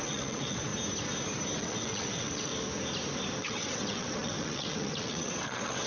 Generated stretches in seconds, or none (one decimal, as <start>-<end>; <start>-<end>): 0.0-0.7; 1.6-2.5; 3.4-5.9